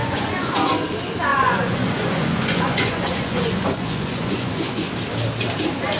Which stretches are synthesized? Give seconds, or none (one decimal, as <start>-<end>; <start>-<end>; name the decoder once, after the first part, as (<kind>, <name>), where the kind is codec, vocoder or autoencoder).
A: 0.0-0.7 (vocoder, Vocos); 1.3-4.9